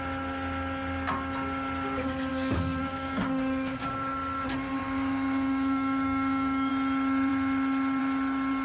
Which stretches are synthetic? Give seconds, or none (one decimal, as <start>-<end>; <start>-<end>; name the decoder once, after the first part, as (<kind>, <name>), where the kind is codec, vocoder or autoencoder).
2.3-3.9 (codec, DAC); 4.8-6.7